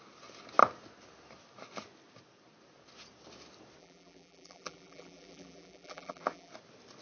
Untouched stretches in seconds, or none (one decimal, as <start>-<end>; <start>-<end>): 0.0-3.8; 6.5-7.0